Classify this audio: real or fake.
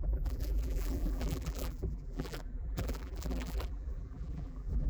fake